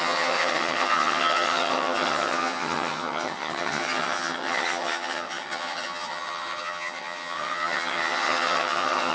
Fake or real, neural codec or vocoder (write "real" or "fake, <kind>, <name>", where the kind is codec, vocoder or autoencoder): fake, vocoder, HiFi-GAN